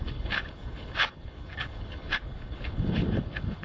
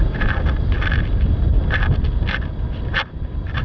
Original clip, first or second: second